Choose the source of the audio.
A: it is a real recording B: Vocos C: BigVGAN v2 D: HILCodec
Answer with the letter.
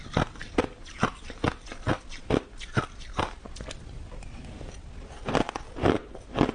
A